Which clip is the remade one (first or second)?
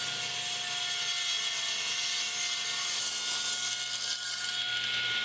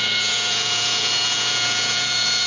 second